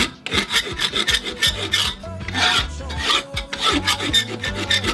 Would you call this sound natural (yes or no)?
yes